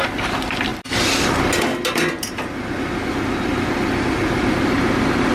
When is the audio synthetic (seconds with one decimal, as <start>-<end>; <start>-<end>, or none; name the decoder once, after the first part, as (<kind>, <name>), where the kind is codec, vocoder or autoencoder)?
none